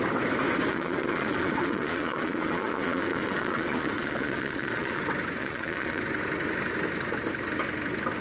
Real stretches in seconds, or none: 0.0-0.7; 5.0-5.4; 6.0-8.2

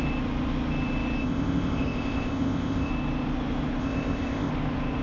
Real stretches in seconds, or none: 0.0-1.2; 2.9-3.8; 4.5-5.0

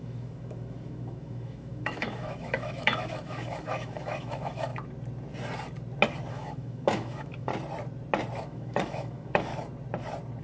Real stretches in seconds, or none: 4.7-6.3; 7.5-8.4; 9.5-10.4

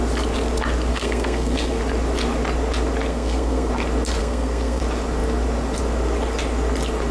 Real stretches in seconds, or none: 0.0-0.9; 1.8-3.1; 3.7-4.2; 4.8-7.1

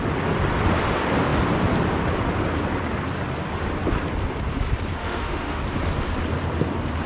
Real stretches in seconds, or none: 0.0-5.0; 5.6-7.1

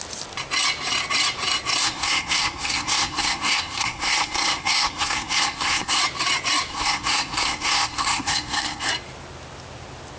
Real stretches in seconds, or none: 0.0-1.8; 6.0-6.7; 8.9-10.2

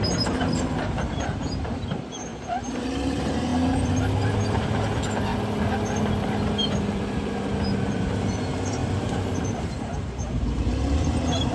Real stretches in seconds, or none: 3.5-4.5; 5.3-7.9